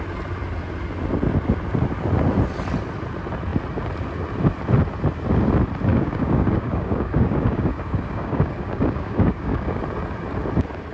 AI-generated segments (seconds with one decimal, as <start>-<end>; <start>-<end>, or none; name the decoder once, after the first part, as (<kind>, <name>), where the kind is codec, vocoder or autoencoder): 5.9-9.8 (codec, DAC)